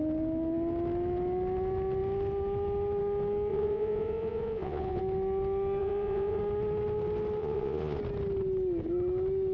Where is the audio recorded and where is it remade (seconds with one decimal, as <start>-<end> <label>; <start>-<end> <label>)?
0.0-3.5 recorded; 3.5-5.0 remade; 5.0-5.8 recorded; 5.8-6.4 remade; 6.4-7.4 recorded; 7.4-8.0 remade; 8.0-9.5 recorded